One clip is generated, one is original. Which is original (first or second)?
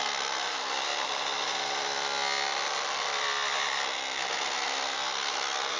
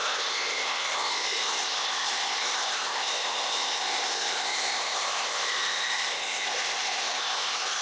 first